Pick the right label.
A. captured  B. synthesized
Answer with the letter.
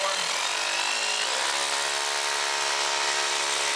A